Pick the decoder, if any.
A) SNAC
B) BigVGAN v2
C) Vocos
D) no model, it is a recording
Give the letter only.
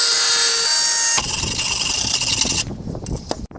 D